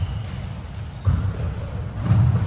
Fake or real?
real